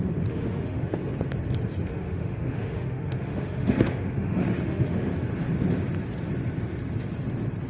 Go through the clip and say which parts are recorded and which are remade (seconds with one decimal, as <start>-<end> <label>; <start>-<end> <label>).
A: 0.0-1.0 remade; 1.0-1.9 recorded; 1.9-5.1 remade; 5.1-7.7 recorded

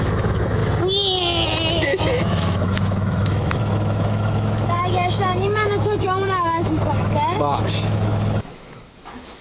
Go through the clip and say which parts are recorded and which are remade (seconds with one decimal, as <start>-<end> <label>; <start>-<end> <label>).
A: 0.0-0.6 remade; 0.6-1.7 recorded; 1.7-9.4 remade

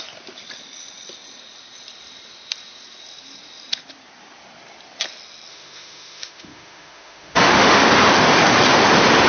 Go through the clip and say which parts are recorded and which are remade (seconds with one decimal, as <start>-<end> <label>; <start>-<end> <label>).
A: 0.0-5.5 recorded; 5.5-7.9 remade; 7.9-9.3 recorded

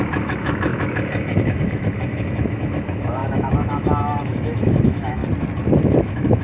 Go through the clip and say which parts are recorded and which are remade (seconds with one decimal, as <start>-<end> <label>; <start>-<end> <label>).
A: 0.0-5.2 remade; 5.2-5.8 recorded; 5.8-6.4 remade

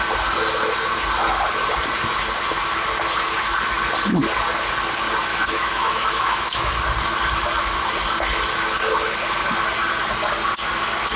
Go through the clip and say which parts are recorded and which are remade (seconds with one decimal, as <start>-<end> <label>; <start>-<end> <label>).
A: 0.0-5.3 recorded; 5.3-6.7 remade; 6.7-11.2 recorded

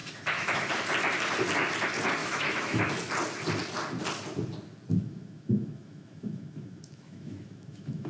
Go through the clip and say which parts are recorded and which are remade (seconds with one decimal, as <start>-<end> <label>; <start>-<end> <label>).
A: 0.0-0.7 remade; 0.7-2.2 recorded; 2.2-2.9 remade; 2.9-4.9 recorded; 4.9-8.1 remade

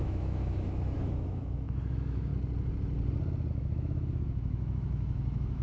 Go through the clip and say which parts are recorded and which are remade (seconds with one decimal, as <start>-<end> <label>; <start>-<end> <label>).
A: 0.0-2.3 remade; 2.3-3.5 recorded; 3.5-5.6 remade

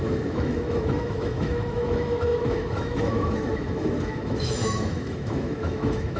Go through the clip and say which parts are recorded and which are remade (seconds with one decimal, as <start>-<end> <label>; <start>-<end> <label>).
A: 0.0-6.2 remade